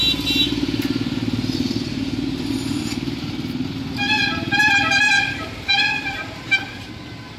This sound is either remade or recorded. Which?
recorded